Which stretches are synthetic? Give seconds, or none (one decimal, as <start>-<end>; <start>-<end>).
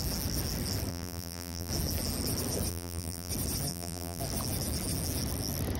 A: 0.9-1.7; 2.7-3.3; 3.7-4.2